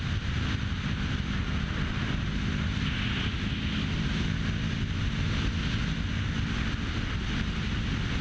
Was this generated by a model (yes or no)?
no